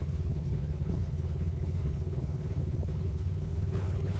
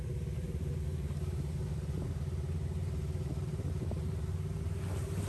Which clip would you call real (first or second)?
second